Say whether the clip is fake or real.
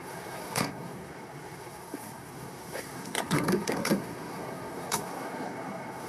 fake